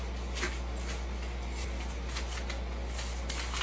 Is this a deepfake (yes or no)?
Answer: no